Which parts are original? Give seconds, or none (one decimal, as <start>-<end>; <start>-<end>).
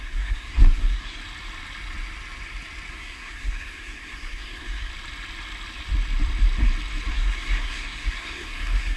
1.2-2.9; 4.9-7.1